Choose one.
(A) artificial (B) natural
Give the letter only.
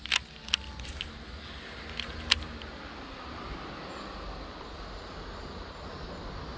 B